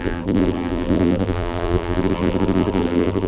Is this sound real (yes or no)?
no